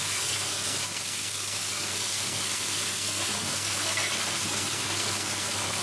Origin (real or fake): fake